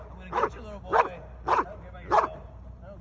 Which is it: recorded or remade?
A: recorded